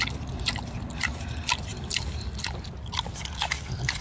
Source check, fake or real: real